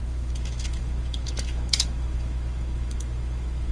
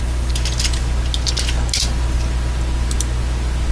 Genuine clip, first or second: second